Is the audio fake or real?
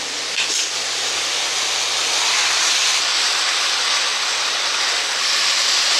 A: fake